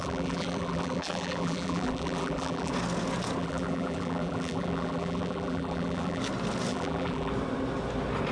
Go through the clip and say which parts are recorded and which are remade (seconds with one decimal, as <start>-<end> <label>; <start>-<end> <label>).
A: 0.0-2.7 remade; 2.7-3.4 recorded; 3.4-6.2 remade; 6.2-6.7 recorded; 6.7-7.3 remade; 7.3-8.3 recorded